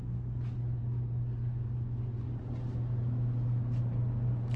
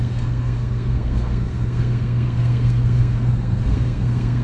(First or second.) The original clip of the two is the first